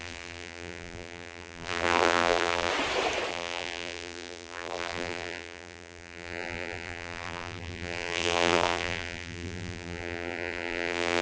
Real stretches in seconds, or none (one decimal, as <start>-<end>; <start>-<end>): 2.7-3.3